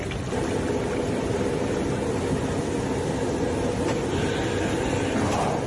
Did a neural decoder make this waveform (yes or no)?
no